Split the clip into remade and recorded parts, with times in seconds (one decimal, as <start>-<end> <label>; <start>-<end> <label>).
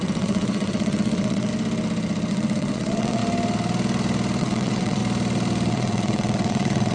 0.0-1.5 remade; 1.5-2.3 recorded; 2.3-3.2 remade; 3.2-4.4 recorded; 4.4-5.0 remade; 5.0-5.7 recorded; 5.7-6.9 remade